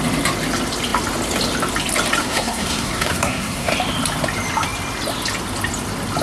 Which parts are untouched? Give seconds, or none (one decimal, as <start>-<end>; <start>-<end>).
0.0-2.2; 3.7-6.2